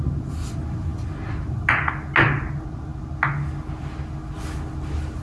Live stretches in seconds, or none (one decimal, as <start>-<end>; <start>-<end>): 0.0-5.2